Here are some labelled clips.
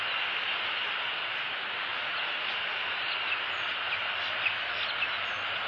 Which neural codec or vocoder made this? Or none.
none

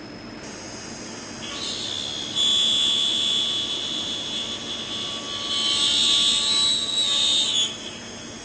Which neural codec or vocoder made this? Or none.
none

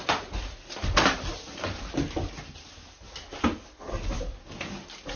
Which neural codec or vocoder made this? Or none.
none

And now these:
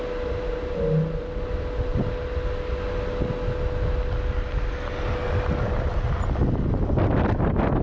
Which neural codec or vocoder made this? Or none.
none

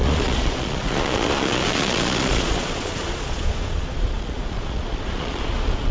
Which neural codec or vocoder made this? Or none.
vocoder, Vocos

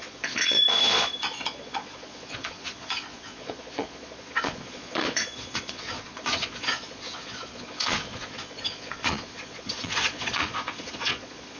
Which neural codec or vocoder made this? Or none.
vocoder, Vocos